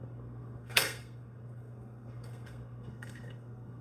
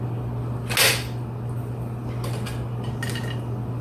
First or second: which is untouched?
second